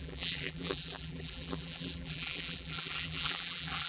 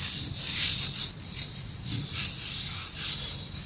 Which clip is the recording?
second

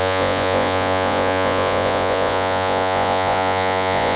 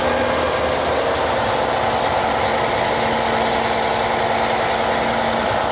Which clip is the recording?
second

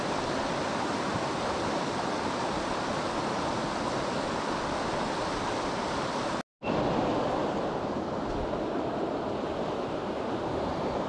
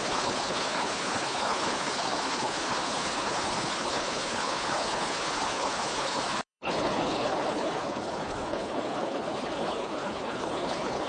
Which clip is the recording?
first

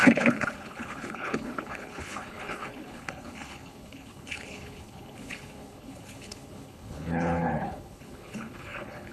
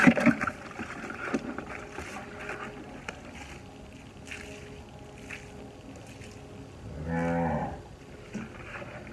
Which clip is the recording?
second